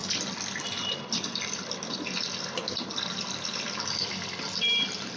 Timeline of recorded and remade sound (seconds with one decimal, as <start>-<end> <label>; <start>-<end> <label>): 0.0-5.2 recorded